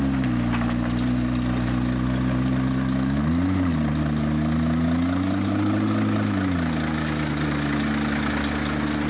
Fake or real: real